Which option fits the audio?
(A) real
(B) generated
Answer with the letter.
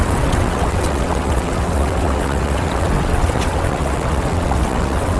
B